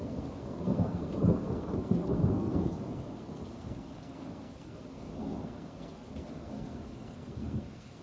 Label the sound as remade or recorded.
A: remade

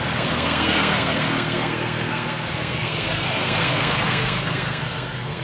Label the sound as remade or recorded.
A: remade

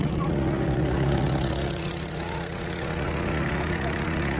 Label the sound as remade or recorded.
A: remade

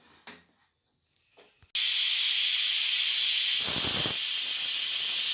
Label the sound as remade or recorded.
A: recorded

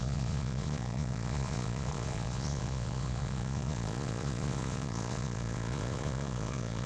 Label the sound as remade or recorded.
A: remade